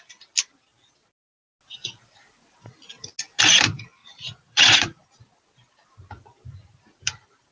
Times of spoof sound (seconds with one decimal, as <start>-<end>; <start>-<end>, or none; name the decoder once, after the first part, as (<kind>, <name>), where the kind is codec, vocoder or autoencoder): 4.0-5.1 (vocoder, Vocos)